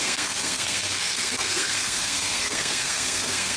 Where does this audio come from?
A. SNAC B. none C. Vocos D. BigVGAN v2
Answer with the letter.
A